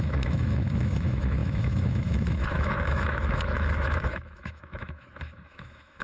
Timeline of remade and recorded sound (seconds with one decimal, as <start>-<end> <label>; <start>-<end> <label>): 0.0-6.0 remade